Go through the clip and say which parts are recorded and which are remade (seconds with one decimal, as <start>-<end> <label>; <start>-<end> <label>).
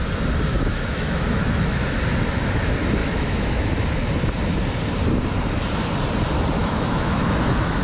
0.0-0.5 recorded; 0.5-2.0 remade; 2.0-3.0 recorded; 3.0-3.7 remade; 3.7-6.6 recorded; 6.6-7.8 remade